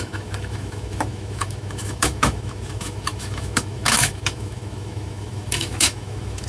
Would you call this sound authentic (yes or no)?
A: no